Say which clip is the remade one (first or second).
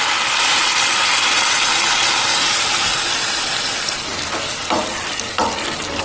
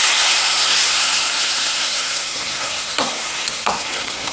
second